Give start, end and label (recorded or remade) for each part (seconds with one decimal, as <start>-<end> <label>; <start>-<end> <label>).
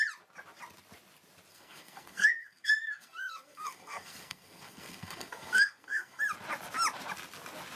0.0-1.5 recorded; 1.5-6.2 remade; 6.2-7.8 recorded